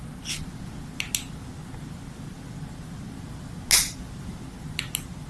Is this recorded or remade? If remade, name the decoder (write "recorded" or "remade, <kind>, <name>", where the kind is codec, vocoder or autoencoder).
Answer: recorded